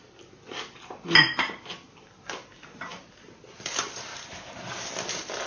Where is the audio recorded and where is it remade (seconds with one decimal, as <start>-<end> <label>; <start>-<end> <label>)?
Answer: 0.0-5.5 recorded